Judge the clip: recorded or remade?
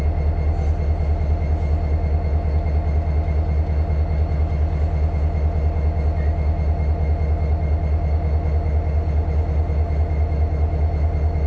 recorded